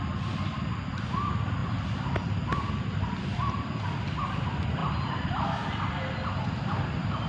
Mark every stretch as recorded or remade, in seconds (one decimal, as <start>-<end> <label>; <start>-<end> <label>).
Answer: 0.0-4.8 recorded; 4.8-5.5 remade; 5.5-7.3 recorded

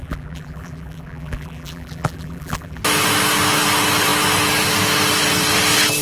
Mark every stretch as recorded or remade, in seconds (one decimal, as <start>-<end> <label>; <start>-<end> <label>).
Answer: 0.0-2.8 remade; 2.8-6.0 recorded